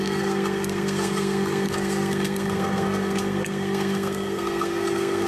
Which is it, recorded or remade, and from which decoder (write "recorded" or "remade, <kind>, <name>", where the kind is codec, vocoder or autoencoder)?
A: remade, codec, SNAC